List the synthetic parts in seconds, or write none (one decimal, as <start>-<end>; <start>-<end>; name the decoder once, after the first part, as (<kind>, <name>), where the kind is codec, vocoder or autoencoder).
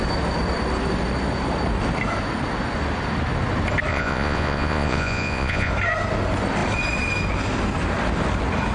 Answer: 3.9-5.7 (vocoder, Vocos)